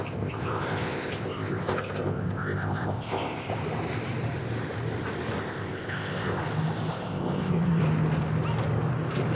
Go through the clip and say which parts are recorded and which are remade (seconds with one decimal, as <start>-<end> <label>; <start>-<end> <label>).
0.0-3.5 remade; 3.5-5.4 recorded; 5.4-6.4 remade; 6.4-6.9 recorded; 6.9-7.8 remade; 7.8-9.4 recorded